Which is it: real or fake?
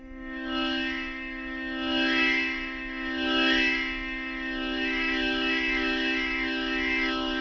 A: fake